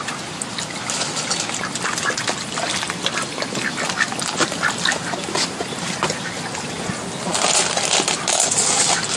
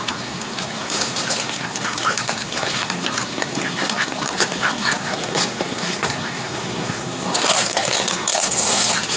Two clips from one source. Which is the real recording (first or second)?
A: first